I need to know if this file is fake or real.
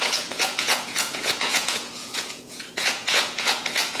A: fake